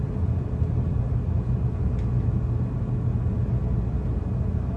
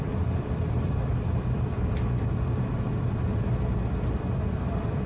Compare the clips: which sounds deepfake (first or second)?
second